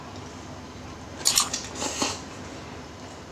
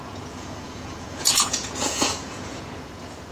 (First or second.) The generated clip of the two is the second